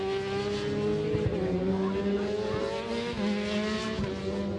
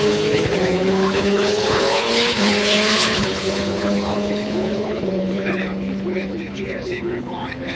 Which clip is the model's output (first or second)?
second